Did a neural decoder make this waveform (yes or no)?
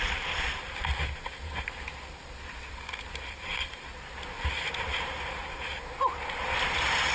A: no